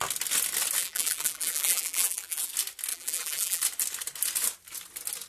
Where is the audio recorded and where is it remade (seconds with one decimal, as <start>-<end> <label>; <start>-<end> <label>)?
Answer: 0.0-0.8 recorded; 0.8-2.5 remade; 2.5-2.9 recorded; 2.9-3.6 remade; 3.6-5.3 recorded